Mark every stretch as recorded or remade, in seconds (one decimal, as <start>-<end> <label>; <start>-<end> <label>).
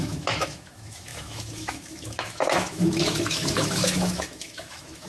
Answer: 0.0-5.1 remade